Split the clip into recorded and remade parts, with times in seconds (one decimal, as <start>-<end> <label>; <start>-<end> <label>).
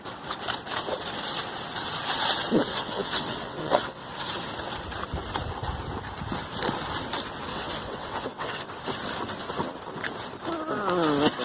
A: 0.0-2.7 recorded; 2.7-4.1 remade; 4.1-7.5 recorded; 7.5-8.7 remade; 8.7-11.4 recorded